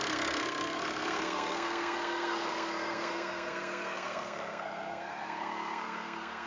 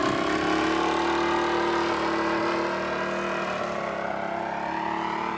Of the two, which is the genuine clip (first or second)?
second